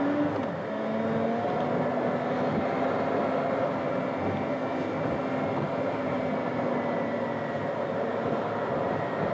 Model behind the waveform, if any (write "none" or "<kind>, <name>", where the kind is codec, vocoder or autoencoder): none